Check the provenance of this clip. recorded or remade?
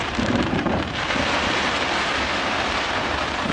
remade